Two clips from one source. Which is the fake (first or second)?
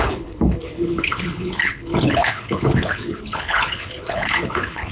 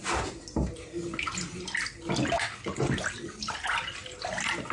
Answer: first